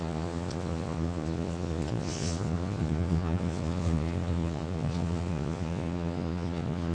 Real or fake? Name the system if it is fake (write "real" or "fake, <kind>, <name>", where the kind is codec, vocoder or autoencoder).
fake, vocoder, Vocos